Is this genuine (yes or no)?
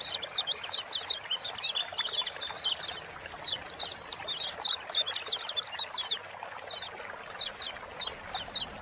yes